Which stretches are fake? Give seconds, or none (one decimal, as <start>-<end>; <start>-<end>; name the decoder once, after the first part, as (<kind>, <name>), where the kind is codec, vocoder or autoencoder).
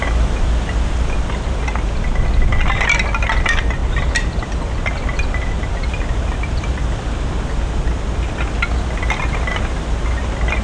none